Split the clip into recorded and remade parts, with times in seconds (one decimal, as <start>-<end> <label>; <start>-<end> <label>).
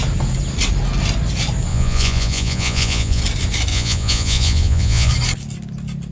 0.0-1.7 recorded; 1.7-3.2 remade; 3.2-3.7 recorded; 3.7-5.1 remade; 5.1-6.1 recorded